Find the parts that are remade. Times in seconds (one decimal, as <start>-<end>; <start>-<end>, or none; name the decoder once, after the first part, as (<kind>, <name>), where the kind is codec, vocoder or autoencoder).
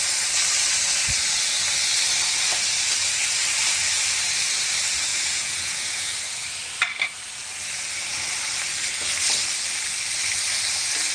5.1-6.1 (vocoder, Vocos)